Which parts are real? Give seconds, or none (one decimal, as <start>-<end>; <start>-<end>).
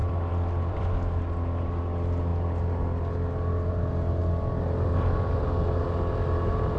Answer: 0.9-6.8